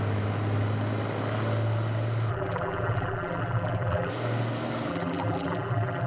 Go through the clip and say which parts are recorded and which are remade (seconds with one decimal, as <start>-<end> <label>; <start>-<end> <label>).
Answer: 0.0-2.3 recorded; 2.3-4.1 remade; 4.1-4.9 recorded; 4.9-6.1 remade